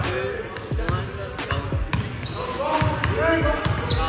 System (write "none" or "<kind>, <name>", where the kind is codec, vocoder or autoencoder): none